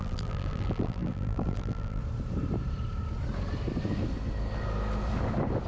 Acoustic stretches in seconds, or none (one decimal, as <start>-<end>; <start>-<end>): 2.0-5.7

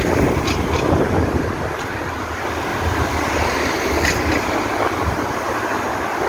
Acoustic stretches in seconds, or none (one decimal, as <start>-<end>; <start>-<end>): 0.0-2.7; 3.9-6.3